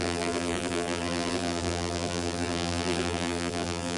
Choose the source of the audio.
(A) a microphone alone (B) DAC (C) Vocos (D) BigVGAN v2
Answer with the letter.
D